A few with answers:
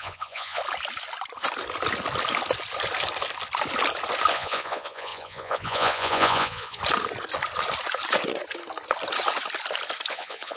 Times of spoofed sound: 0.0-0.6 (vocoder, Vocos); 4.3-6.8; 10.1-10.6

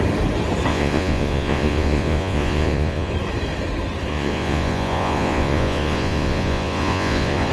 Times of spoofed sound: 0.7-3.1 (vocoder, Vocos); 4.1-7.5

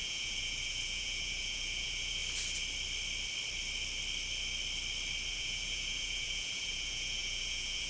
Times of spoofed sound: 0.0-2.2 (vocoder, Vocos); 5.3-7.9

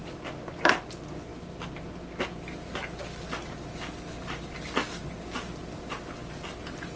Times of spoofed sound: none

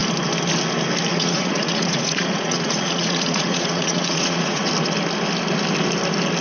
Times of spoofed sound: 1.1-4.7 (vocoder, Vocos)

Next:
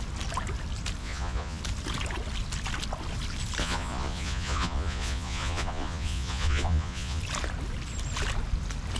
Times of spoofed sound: 1.0-1.6 (vocoder, Vocos); 3.6-7.2

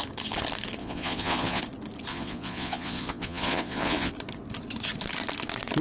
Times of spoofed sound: 0.8-1.6 (vocoder, Vocos); 2.1-4.1

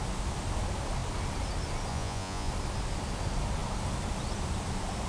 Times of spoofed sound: 1.9-2.5 (vocoder, Vocos)